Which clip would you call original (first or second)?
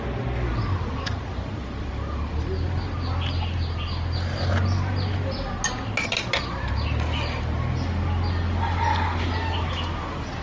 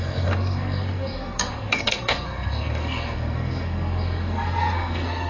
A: first